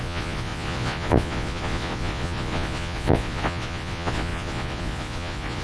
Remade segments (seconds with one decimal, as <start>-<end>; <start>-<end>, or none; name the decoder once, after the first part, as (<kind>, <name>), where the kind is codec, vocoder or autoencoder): 0.0-5.6 (vocoder, Vocos)